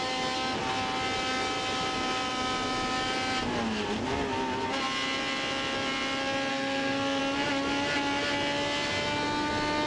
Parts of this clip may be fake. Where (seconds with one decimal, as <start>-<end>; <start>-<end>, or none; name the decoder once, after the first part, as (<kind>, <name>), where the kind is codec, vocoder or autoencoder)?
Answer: 6.5-7.2 (codec, SNAC)